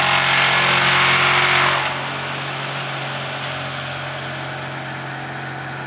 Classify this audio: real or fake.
real